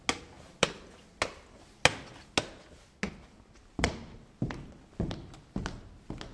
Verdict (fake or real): real